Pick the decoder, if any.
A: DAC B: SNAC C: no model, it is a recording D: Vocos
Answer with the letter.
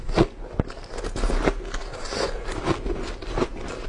C